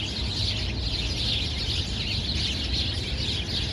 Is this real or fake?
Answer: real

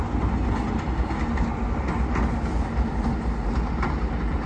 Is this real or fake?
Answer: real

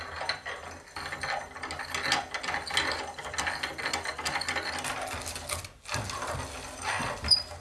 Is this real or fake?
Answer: real